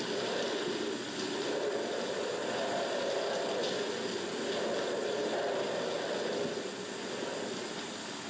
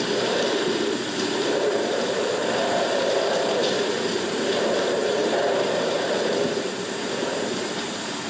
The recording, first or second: first